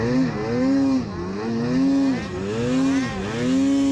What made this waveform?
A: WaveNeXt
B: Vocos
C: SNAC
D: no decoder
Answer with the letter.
D